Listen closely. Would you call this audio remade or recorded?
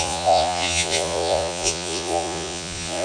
remade